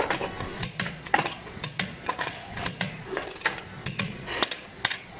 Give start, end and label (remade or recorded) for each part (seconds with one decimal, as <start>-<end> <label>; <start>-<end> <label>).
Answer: 0.0-0.5 recorded; 0.5-3.3 remade; 3.3-3.8 recorded; 3.8-5.2 remade